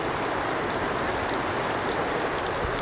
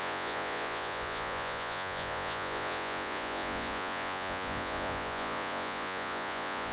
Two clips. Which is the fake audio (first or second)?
second